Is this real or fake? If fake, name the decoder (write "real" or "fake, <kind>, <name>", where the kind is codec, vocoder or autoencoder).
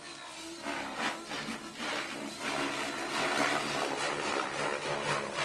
real